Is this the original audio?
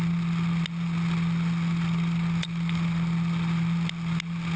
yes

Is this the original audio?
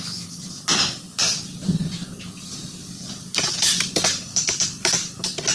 yes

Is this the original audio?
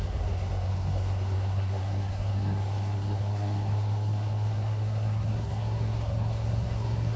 no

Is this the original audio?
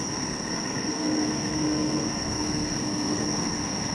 no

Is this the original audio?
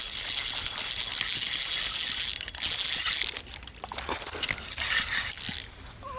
yes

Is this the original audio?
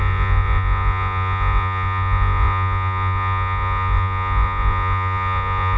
no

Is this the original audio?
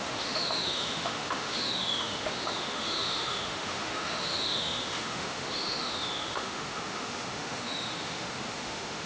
no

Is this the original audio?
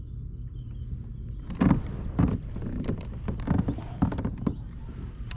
yes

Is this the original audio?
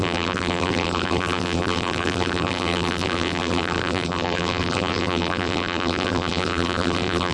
no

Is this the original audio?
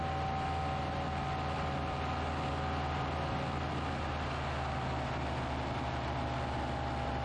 yes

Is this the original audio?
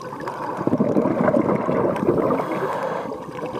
yes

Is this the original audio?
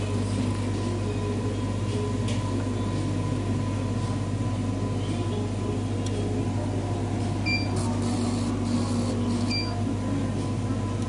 yes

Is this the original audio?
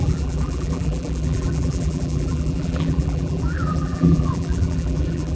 no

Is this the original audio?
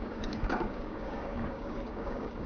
no